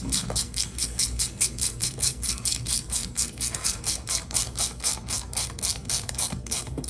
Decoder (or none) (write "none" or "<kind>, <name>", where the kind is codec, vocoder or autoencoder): codec, SNAC